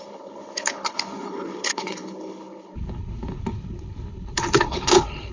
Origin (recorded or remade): remade